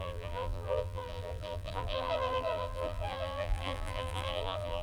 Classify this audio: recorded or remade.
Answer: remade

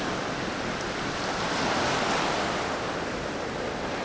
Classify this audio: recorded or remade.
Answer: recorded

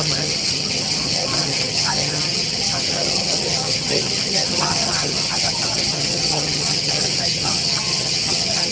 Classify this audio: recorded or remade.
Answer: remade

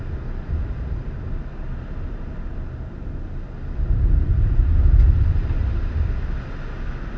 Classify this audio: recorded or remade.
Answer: recorded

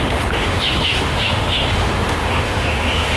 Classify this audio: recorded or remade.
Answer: remade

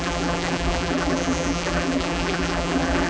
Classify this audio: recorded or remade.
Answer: remade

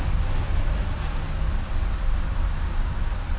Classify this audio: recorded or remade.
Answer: recorded